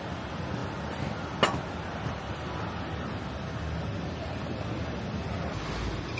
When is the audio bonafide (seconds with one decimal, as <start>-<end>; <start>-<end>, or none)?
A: 0.0-6.2